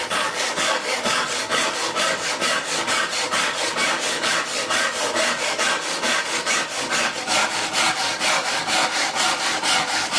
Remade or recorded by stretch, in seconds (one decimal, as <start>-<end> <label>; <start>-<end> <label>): 0.0-10.2 remade